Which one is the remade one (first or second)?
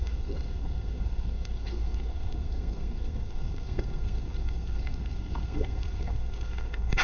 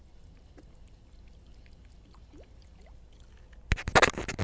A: first